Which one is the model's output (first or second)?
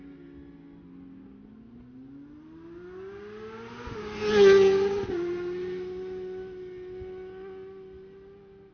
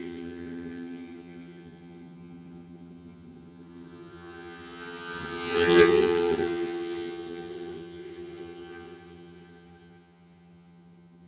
second